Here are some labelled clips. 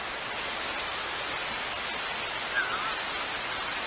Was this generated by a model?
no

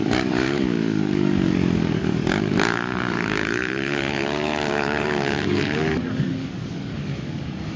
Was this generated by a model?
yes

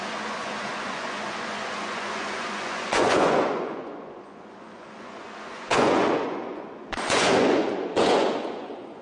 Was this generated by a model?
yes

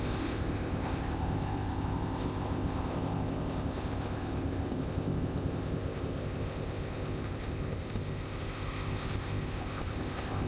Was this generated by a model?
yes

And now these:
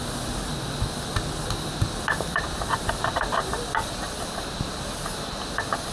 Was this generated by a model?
no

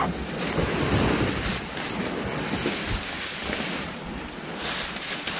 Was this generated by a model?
no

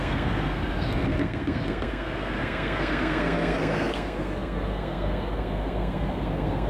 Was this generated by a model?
yes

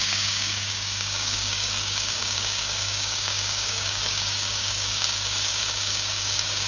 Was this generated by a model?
yes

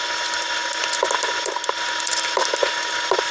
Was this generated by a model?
no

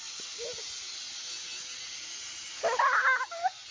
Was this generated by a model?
no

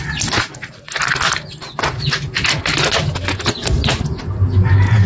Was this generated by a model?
no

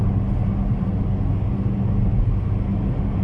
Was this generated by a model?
no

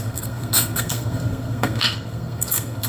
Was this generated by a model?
yes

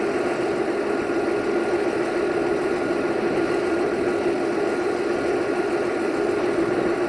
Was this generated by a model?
no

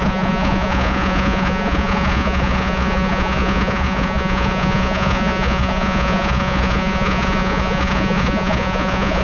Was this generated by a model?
yes